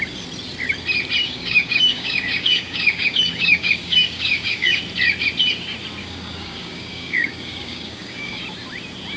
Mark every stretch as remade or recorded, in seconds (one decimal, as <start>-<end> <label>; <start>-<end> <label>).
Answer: 0.0-1.2 recorded; 1.2-4.8 remade; 4.8-6.0 recorded; 6.0-8.4 remade; 8.4-9.2 recorded